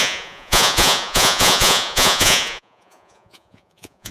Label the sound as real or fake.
fake